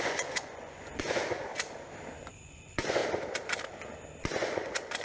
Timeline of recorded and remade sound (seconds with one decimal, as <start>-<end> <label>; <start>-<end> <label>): 0.0-1.5 remade; 1.5-2.2 recorded; 2.2-3.0 remade; 3.0-4.2 recorded; 4.2-5.0 remade